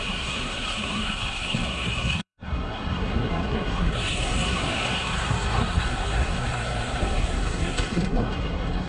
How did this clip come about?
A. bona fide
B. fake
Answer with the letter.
B